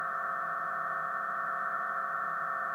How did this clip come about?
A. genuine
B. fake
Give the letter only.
A